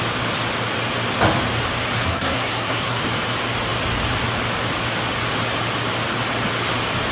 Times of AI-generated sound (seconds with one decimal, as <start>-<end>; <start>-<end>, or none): 2.1-3.0